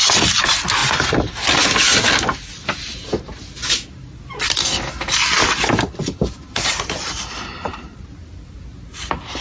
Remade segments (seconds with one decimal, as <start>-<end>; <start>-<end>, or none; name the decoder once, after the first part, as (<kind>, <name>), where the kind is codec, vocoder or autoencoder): 0.8-1.4 (vocoder, BigVGAN v2); 6.0-8.0

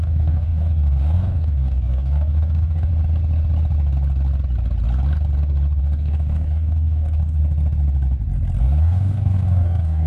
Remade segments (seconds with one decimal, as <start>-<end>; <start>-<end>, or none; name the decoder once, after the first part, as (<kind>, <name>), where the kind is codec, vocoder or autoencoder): 0.0-2.9 (codec, DAC); 5.8-7.4; 8.6-10.1

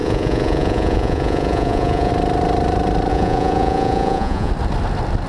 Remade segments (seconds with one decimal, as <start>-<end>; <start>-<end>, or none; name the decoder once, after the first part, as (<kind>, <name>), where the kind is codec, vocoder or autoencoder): 0.0-2.1 (vocoder, Vocos); 3.1-4.5

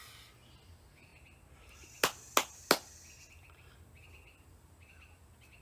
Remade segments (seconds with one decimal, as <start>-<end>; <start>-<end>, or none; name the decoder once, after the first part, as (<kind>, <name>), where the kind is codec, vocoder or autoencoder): none

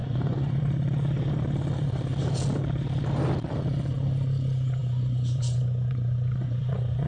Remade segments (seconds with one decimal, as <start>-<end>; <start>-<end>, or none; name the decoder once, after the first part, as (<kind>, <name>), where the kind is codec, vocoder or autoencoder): 0.0-0.6 (vocoder, Vocos); 4.8-7.1

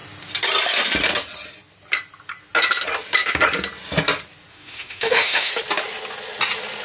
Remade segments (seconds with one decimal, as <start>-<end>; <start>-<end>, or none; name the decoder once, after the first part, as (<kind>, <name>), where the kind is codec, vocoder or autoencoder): 4.5-5.5 (autoencoder, DAC-VAE)

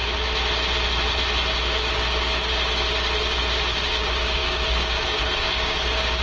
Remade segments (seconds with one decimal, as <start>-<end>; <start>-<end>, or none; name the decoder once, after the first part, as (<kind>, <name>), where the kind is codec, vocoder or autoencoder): 3.7-6.2 (codec, DAC)